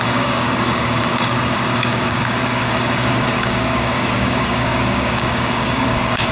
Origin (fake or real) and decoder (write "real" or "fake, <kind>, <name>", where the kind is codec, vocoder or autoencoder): fake, codec, DAC